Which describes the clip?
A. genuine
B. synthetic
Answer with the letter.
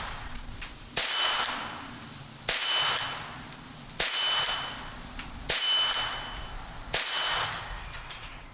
A